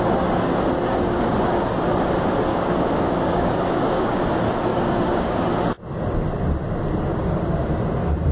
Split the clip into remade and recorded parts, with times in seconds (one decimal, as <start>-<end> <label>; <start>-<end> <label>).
0.0-2.5 recorded; 2.5-4.2 remade; 4.2-4.7 recorded; 4.7-5.5 remade; 5.5-8.3 recorded